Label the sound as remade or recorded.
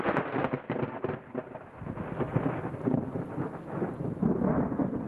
recorded